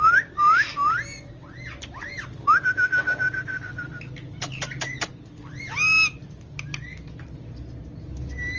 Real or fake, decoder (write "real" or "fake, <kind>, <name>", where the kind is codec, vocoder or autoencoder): real